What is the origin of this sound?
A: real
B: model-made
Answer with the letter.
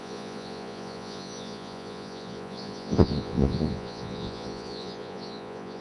B